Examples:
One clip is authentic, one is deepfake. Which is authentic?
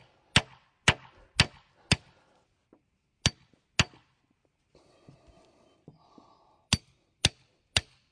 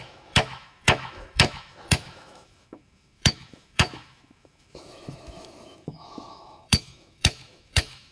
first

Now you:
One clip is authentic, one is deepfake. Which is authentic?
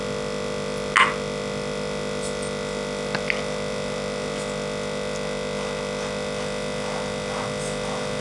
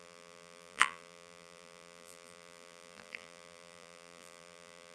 first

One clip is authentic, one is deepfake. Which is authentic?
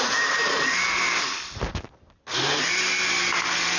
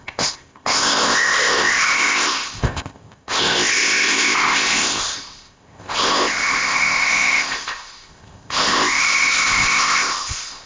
first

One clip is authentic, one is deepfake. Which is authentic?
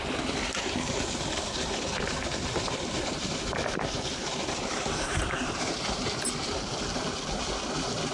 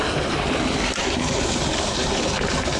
second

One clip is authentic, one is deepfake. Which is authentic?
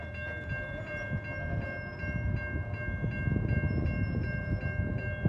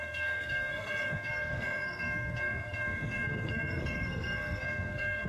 first